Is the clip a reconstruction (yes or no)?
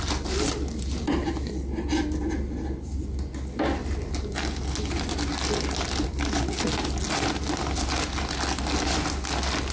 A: no